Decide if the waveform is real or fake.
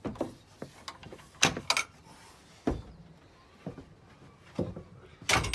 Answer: real